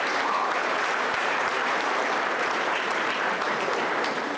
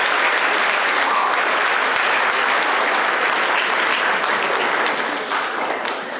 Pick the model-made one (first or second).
first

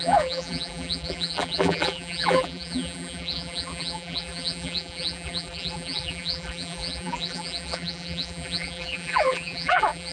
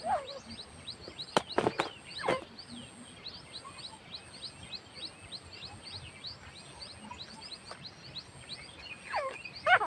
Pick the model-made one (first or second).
first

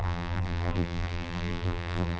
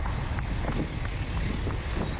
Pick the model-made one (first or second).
first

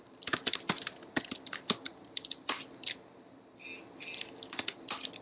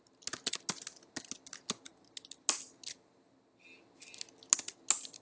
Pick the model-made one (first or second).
first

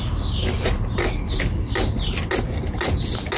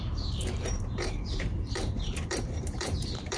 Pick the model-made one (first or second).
second